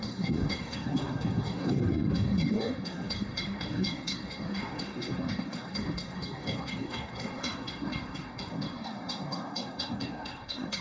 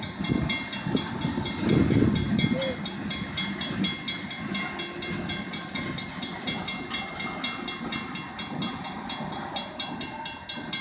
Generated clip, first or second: first